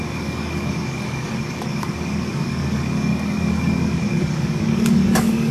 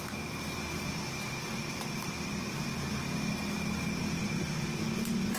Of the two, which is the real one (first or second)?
second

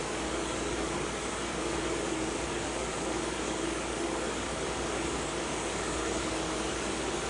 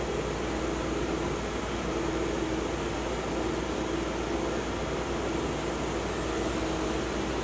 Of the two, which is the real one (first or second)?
second